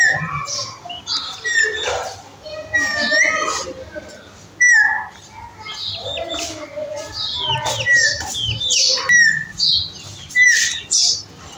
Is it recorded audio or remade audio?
recorded